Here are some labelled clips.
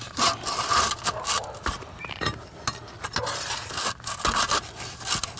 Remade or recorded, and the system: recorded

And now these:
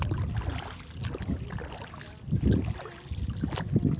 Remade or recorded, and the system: recorded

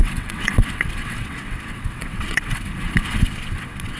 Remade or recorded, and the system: remade, vocoder, WaveNeXt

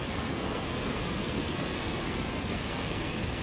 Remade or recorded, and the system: remade, codec, SNAC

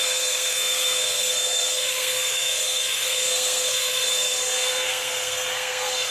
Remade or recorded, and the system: remade, codec, SNAC